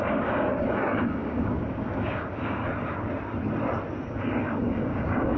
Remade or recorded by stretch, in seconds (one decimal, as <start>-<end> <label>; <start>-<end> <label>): 0.0-2.6 remade; 2.6-4.0 recorded; 4.0-5.4 remade